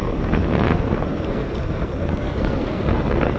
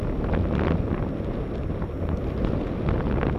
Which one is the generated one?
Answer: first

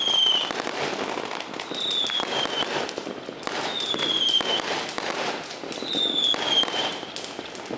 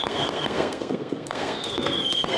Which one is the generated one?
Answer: second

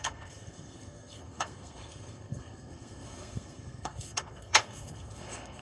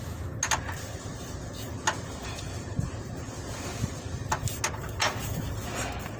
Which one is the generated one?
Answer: first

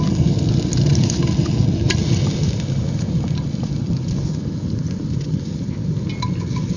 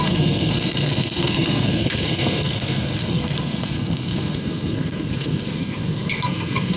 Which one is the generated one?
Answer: second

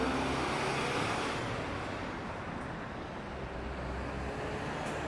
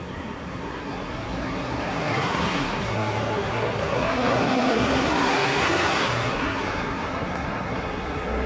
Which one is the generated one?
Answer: second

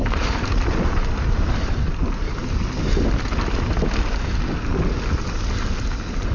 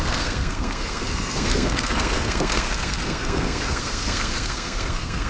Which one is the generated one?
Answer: second